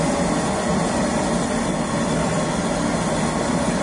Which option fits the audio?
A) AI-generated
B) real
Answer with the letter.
B